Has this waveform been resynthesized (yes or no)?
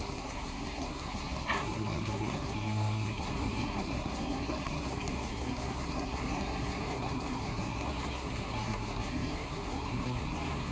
yes